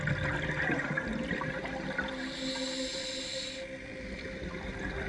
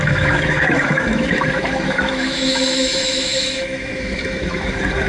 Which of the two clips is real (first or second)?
first